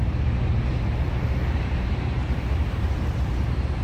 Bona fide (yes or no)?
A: no